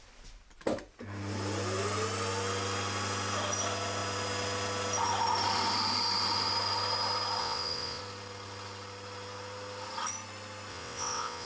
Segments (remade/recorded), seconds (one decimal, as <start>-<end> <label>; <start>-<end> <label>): 0.0-7.4 recorded; 7.4-8.0 remade; 8.0-10.7 recorded; 10.7-11.5 remade